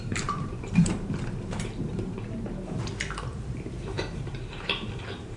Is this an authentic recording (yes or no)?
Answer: no